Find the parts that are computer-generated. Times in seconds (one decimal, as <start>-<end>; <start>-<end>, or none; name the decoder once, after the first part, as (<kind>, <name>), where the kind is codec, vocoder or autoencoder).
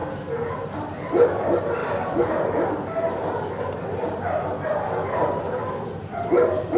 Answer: none